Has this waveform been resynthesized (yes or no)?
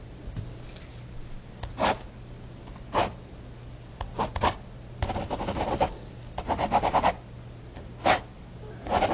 no